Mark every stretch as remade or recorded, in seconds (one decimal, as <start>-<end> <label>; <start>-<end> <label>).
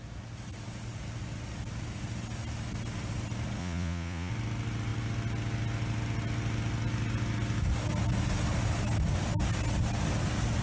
0.0-3.6 recorded; 3.6-4.3 remade; 4.3-10.6 recorded